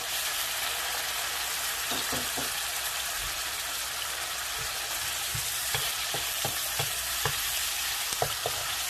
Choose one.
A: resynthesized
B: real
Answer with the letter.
A